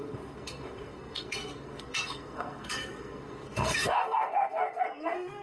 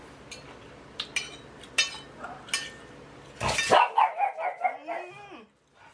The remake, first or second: first